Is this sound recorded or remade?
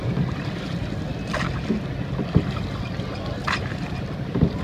recorded